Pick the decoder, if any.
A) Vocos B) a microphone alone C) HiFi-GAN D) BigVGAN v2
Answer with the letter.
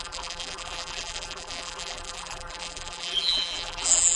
D